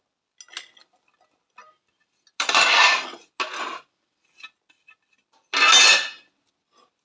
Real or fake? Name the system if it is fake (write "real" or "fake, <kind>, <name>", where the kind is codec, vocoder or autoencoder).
real